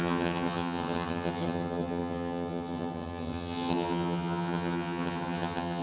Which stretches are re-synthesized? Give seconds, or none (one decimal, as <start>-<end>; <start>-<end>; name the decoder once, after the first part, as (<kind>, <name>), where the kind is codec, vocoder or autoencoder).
0.0-5.8 (vocoder, HiFi-GAN)